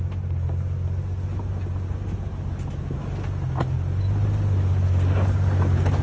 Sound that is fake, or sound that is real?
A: real